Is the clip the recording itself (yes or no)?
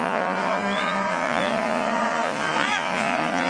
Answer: no